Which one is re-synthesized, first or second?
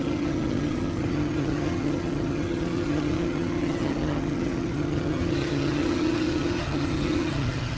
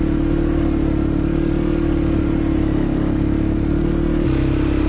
first